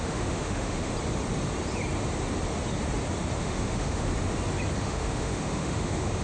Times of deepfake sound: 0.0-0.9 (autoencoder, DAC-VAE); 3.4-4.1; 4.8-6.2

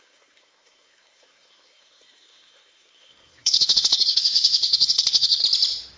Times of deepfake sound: 0.0-5.4 (codec, SNAC)

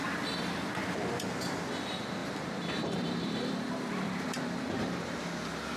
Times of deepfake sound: 0.8-1.6 (vocoder, BigVGAN v2); 2.2-5.2